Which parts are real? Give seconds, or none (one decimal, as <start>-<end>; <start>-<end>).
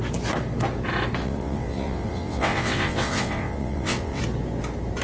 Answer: 0.0-1.2; 4.2-5.0